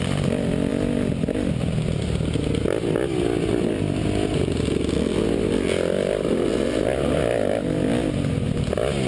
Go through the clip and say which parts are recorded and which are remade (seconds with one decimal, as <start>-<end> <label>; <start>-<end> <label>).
0.0-9.1 recorded

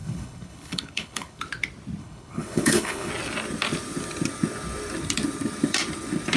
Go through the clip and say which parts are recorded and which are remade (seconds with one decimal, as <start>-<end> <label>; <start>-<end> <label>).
0.0-1.4 remade; 1.4-2.0 recorded; 2.0-3.1 remade; 3.1-6.4 recorded

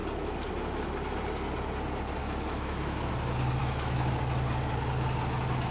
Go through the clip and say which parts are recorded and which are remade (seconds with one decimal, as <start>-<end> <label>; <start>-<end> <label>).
0.0-2.2 recorded; 2.2-3.1 remade; 3.1-3.6 recorded; 3.6-4.2 remade; 4.2-5.7 recorded

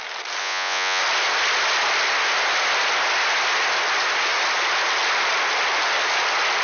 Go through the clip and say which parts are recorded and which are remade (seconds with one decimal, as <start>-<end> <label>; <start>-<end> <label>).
0.0-0.4 recorded; 0.4-1.0 remade; 1.0-6.6 recorded

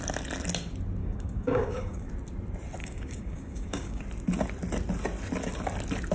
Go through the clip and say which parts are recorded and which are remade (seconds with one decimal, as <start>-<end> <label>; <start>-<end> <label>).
0.0-1.0 recorded; 1.0-2.1 remade; 2.1-2.8 recorded; 2.8-4.0 remade; 4.0-6.1 recorded